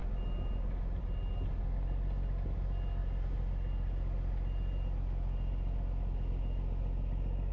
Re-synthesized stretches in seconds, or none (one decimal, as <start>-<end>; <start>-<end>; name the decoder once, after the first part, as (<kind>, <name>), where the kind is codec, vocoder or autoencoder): none